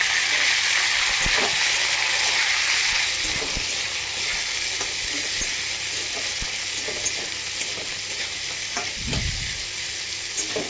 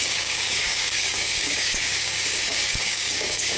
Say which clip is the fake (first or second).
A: second